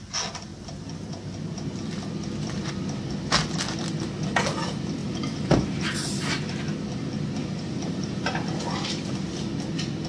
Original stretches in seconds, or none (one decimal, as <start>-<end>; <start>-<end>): 0.0-5.0; 6.6-7.4; 8.6-10.1